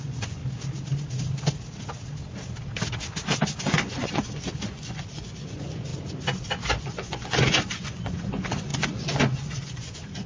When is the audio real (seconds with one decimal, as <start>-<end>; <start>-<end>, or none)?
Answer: 0.4-3.6; 5.9-6.8